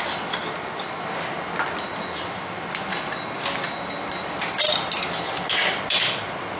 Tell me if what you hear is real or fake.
real